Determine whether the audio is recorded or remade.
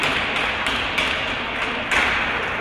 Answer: recorded